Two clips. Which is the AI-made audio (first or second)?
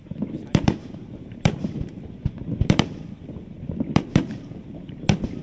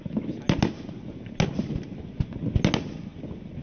first